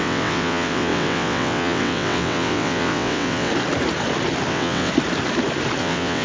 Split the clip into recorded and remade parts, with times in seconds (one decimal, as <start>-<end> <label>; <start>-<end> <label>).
0.0-3.5 remade; 3.5-4.5 recorded; 4.5-4.9 remade; 4.9-5.8 recorded; 5.8-6.2 remade